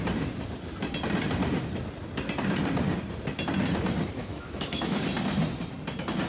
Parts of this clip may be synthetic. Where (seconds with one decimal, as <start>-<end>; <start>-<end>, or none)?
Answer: 4.2-5.0